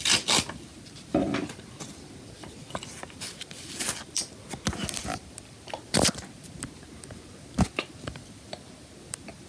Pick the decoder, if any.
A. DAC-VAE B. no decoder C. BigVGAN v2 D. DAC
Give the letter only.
C